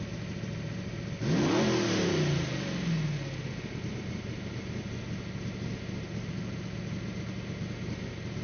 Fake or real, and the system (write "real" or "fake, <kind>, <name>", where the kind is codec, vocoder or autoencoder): real